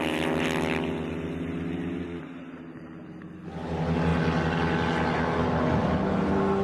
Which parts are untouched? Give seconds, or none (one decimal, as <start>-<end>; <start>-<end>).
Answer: 0.0-6.6

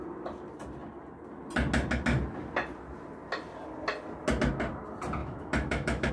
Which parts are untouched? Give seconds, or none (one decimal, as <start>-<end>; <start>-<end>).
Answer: 0.0-5.2

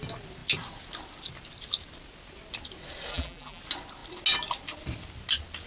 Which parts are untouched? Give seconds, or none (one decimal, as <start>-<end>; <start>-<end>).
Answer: 0.0-3.1; 3.6-5.7

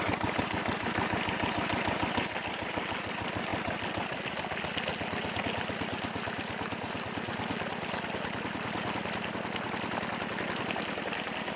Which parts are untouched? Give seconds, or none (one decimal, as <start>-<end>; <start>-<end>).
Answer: 0.0-11.6

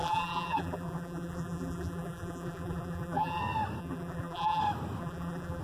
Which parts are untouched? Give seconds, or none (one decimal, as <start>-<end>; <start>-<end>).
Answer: 3.4-3.8; 4.6-5.0